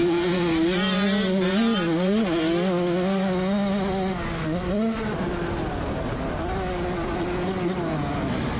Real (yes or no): yes